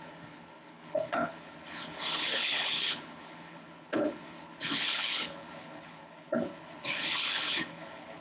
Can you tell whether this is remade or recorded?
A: remade